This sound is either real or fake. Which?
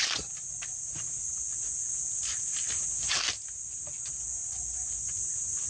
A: real